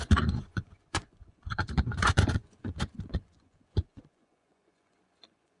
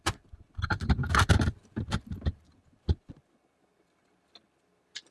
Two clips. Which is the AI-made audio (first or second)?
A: first